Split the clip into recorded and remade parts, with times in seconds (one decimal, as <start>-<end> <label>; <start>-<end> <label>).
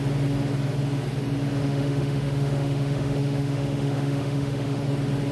0.0-1.6 recorded; 1.6-4.8 remade; 4.8-5.3 recorded